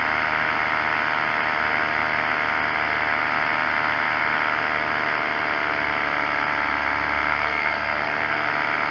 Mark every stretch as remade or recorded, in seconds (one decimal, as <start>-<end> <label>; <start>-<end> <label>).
0.0-7.3 recorded; 7.3-8.5 remade; 8.5-8.9 recorded